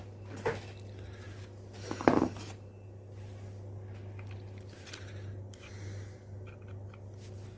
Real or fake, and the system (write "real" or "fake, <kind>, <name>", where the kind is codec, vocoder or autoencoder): real